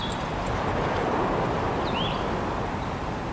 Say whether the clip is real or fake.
real